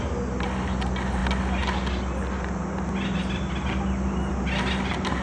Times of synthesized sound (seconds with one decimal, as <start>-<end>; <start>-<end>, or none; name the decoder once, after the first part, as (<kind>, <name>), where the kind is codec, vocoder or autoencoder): none